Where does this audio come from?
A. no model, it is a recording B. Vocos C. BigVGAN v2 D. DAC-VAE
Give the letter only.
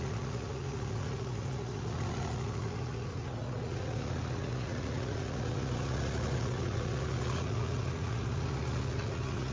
B